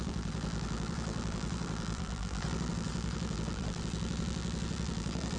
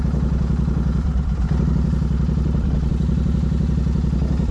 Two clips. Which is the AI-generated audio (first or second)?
first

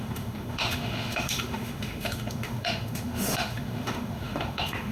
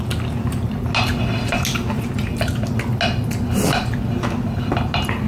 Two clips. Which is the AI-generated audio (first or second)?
first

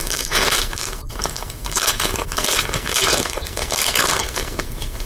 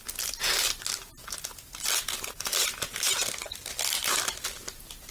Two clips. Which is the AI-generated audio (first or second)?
first